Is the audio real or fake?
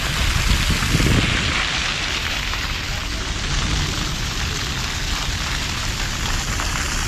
real